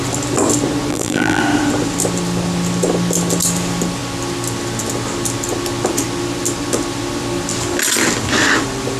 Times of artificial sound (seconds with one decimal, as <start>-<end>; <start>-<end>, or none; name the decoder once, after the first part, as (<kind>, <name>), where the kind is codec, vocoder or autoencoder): 0.9-1.4 (vocoder, BigVGAN v2)